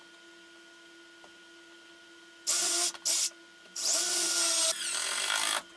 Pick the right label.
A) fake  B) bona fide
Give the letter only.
B